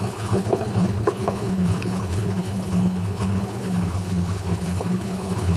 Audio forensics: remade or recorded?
remade